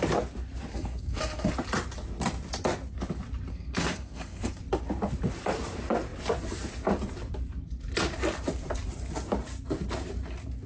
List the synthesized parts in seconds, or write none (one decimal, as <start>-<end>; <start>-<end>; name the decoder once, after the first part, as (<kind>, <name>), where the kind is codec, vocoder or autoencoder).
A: 0.7-1.5 (codec, SNAC); 3.5-4.6